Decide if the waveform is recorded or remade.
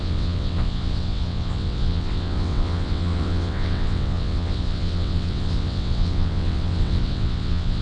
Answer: remade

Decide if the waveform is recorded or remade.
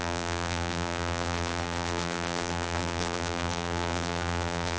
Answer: remade